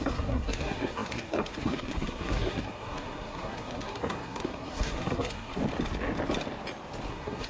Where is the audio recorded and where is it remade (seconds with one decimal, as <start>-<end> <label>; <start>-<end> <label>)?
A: 0.0-5.6 remade; 5.6-7.1 recorded; 7.1-7.5 remade